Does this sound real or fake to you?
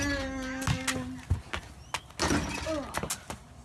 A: real